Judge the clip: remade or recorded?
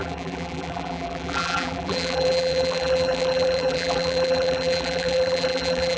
remade